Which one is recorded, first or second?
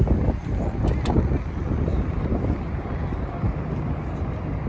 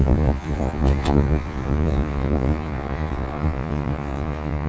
first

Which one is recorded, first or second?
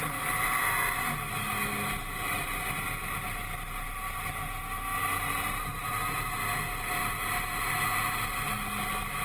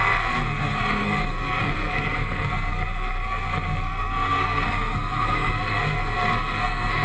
first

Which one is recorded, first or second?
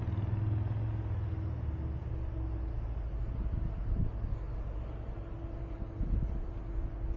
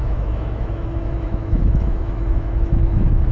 first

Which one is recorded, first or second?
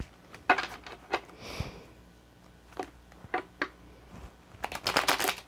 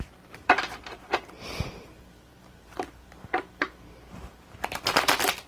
first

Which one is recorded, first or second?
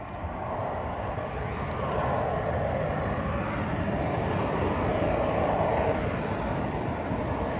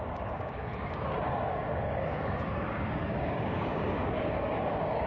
first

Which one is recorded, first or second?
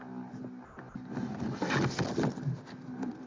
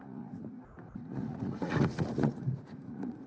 first